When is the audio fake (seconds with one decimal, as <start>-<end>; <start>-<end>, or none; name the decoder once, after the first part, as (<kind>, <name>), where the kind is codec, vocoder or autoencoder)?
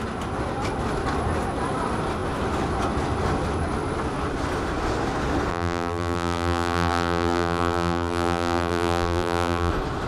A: 5.5-9.7 (vocoder, BigVGAN v2)